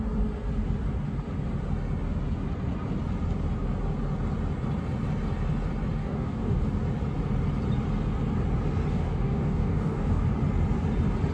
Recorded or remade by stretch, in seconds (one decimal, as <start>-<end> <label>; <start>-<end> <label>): 0.0-6.0 recorded; 6.0-6.6 remade; 6.6-8.9 recorded; 8.9-10.3 remade; 10.3-11.3 recorded